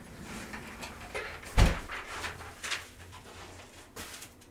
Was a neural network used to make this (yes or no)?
yes